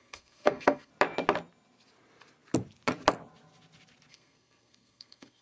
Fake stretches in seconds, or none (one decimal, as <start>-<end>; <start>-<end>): 0.0-0.9; 4.1-5.4